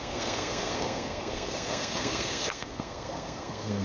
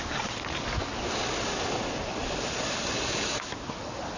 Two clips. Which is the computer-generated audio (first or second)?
first